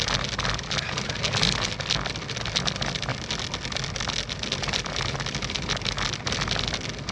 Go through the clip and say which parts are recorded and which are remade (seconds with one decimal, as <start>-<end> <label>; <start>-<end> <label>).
0.0-7.1 recorded